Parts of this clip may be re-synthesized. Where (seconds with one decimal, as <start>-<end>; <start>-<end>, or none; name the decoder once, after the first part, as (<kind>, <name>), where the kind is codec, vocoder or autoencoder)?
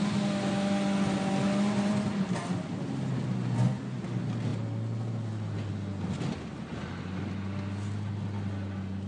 none